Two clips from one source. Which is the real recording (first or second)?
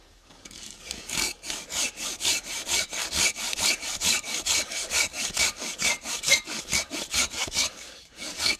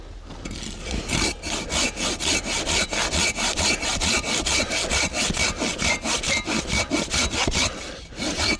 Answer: second